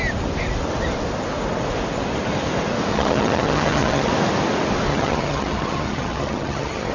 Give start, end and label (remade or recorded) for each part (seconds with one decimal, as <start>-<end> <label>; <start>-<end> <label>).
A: 0.0-2.9 recorded; 2.9-4.1 remade; 4.1-4.9 recorded; 4.9-6.9 remade